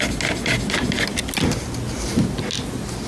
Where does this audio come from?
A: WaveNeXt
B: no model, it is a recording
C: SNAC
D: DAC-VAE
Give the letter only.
B